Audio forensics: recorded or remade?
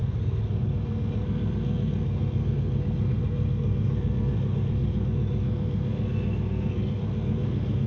remade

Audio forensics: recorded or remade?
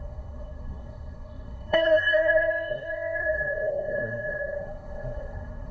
remade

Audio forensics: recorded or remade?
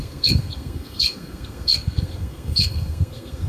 remade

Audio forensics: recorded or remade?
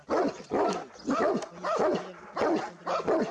recorded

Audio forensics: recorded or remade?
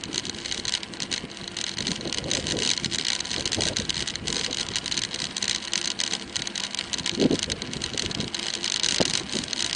recorded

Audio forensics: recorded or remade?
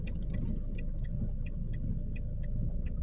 recorded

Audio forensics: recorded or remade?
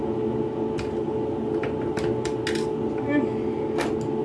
recorded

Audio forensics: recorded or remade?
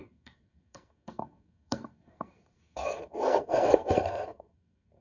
remade